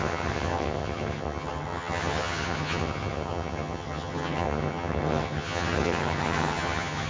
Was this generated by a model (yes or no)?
yes